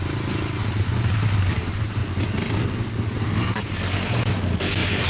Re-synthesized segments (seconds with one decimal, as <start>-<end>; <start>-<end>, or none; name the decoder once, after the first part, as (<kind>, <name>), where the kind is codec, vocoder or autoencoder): none